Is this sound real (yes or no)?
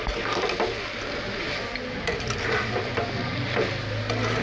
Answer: yes